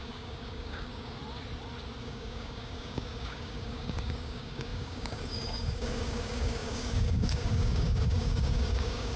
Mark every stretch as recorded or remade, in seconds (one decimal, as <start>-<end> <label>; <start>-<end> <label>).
0.0-1.2 remade; 1.2-2.0 recorded; 2.0-9.2 remade